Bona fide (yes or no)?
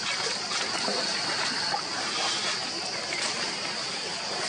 yes